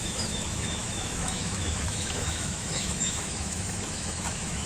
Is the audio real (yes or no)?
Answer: no